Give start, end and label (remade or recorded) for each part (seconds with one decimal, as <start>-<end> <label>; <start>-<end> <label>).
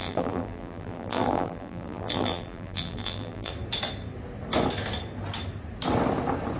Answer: 0.0-3.5 remade; 3.5-6.6 recorded